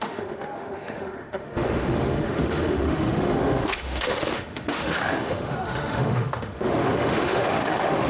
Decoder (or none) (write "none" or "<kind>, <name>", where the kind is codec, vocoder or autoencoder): autoencoder, DAC-VAE